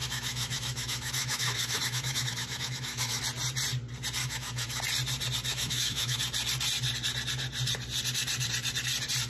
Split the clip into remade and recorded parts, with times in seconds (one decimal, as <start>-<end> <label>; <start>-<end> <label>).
0.0-3.2 remade; 3.2-4.2 recorded; 4.2-4.8 remade; 4.8-5.5 recorded; 5.5-6.2 remade; 6.2-9.3 recorded